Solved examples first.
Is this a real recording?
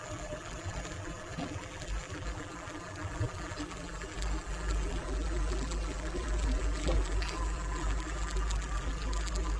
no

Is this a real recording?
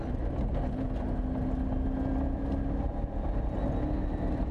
yes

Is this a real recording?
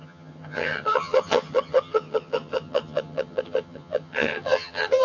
no